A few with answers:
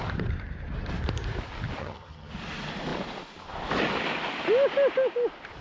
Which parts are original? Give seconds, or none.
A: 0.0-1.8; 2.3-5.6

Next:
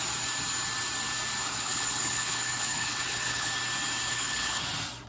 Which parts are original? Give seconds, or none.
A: 0.0-1.4; 3.5-4.1; 4.6-5.1

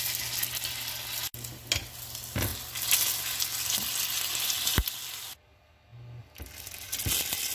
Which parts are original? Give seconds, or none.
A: 0.0-7.5

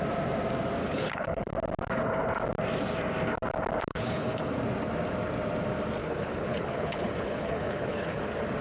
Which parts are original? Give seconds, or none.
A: 0.0-0.8; 1.5-3.9; 4.5-6.0; 8.2-8.6

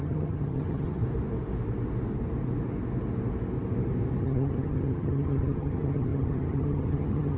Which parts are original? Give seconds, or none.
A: 1.0-4.2

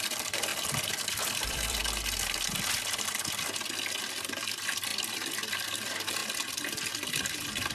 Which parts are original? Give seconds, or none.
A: 0.5-1.0; 1.8-4.0; 4.9-5.5; 6.2-6.9

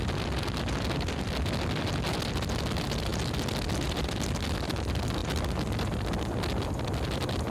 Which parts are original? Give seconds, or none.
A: 0.0-7.5